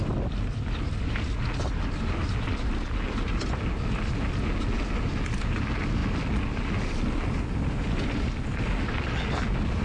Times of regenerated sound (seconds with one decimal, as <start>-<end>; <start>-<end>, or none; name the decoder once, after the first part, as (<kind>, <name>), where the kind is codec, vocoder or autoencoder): none